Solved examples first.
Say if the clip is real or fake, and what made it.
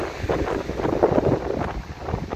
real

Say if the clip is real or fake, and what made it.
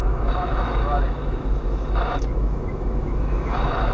fake, autoencoder, DAC-VAE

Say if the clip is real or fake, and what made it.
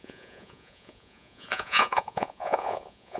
fake, vocoder, Vocos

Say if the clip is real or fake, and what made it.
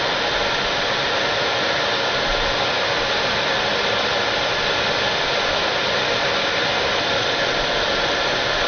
real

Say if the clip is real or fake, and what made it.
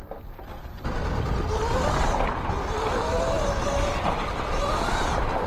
real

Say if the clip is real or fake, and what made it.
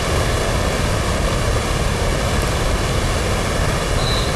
real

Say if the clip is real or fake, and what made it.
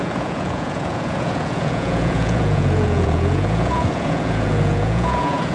fake, vocoder, Vocos